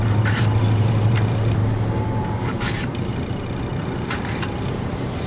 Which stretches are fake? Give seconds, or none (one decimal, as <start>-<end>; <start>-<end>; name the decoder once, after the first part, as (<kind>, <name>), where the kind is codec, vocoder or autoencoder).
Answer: 0.0-1.6 (vocoder, BigVGAN v2); 2.2-3.1; 3.8-5.3